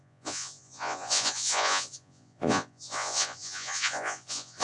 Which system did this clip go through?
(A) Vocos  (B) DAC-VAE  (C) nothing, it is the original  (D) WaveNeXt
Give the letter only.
A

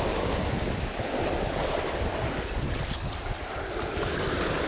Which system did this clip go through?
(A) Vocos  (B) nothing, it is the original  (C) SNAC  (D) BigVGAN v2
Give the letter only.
B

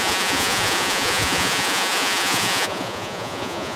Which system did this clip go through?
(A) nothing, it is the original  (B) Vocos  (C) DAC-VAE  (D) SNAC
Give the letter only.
B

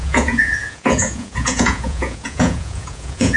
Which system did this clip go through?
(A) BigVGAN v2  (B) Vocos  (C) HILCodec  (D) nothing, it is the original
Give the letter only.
B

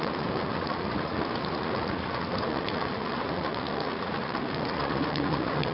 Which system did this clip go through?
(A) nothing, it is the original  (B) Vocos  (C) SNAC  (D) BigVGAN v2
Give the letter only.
B